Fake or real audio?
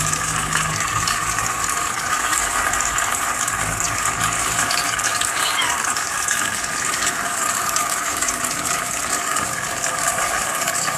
fake